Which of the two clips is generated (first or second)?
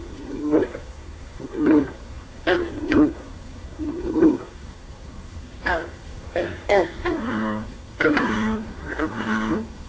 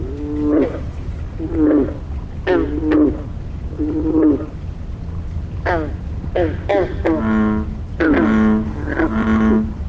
first